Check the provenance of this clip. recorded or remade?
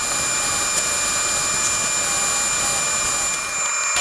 recorded